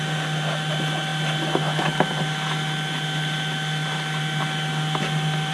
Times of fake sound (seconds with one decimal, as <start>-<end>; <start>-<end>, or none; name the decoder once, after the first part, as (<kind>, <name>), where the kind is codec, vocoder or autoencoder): none